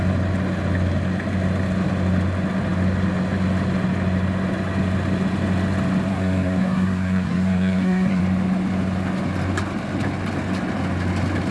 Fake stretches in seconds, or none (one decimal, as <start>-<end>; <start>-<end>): 6.1-8.2